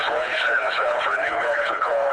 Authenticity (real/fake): fake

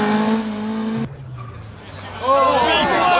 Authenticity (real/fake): real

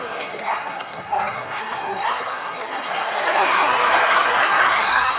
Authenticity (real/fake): fake